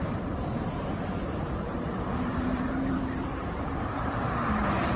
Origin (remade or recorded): remade